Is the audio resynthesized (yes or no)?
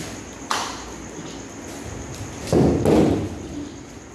no